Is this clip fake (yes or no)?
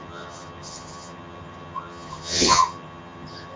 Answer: yes